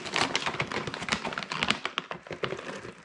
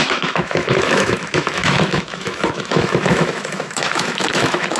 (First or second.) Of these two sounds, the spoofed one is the second